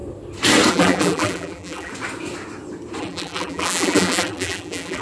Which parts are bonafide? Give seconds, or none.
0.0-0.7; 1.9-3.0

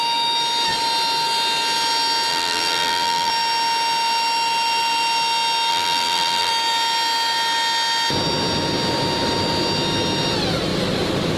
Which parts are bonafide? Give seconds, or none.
0.0-2.3; 3.3-5.7; 6.5-11.4

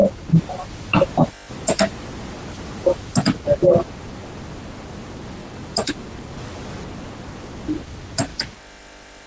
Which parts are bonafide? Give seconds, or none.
0.0-5.4; 6.3-9.3

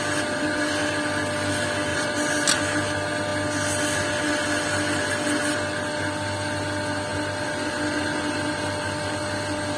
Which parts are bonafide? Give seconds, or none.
0.0-1.9; 2.6-9.8

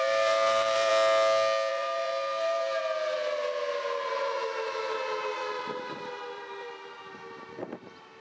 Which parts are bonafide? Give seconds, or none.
0.9-1.7; 2.8-4.1